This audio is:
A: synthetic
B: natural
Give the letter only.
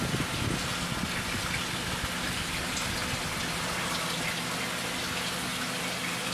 B